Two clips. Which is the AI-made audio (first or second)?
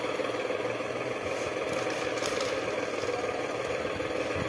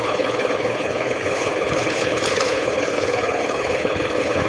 second